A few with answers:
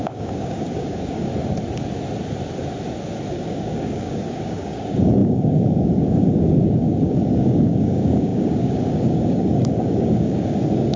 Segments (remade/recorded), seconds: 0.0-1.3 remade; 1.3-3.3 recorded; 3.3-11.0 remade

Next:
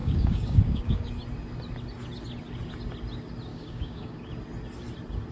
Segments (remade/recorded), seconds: 0.0-1.1 remade; 1.1-3.5 recorded; 3.5-4.3 remade; 4.3-5.3 recorded

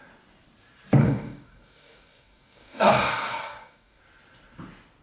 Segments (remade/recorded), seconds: 0.0-1.0 recorded; 1.0-4.0 remade; 4.0-5.0 recorded

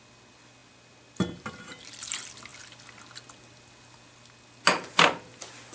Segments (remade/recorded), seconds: 0.0-5.7 recorded

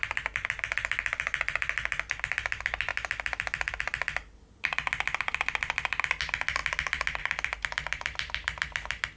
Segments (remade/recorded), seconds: 0.0-9.2 recorded

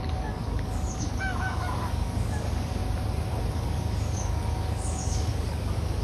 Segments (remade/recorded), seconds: 0.0-2.8 remade; 2.8-3.5 recorded; 3.5-6.0 remade

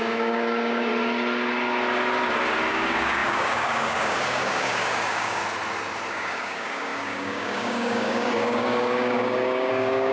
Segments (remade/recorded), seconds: 0.0-0.9 remade; 0.9-2.7 recorded; 2.7-5.4 remade; 5.4-6.1 recorded; 6.1-10.1 remade

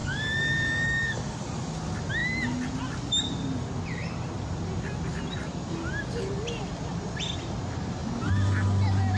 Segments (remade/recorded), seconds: 0.0-1.4 remade; 1.4-9.2 recorded